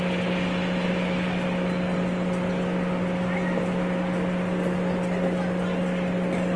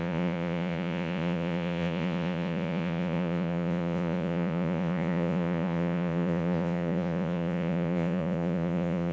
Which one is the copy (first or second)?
second